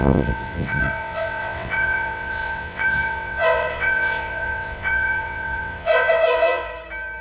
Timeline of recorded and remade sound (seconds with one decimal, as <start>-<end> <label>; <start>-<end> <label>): 0.0-6.7 remade; 6.7-7.2 recorded